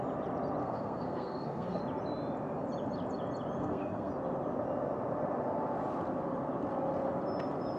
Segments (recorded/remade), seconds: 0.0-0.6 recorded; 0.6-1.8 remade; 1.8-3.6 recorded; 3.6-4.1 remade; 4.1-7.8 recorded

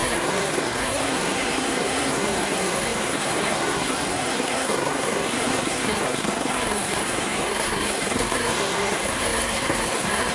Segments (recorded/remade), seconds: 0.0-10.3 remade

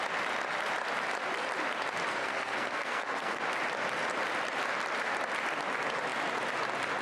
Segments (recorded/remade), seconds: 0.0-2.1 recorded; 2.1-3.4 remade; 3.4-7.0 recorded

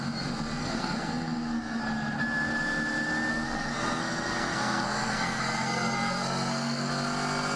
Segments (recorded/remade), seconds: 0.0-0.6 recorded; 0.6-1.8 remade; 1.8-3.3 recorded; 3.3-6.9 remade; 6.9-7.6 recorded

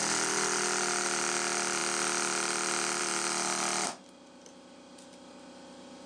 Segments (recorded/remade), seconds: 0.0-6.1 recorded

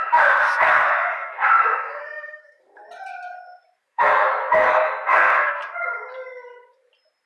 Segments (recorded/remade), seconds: 0.0-2.8 remade; 2.8-3.8 recorded; 3.8-5.6 remade; 5.6-7.3 recorded

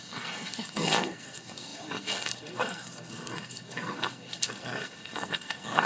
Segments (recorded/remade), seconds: 0.0-5.9 remade

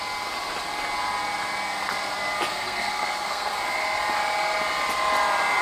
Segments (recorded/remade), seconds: 0.0-2.5 recorded; 2.5-3.5 remade; 3.5-5.6 recorded